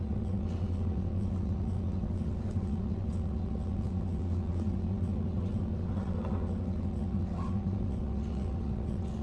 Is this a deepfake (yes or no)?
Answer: yes